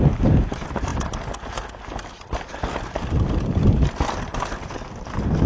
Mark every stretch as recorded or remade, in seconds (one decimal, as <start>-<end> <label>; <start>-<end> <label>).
0.0-5.5 recorded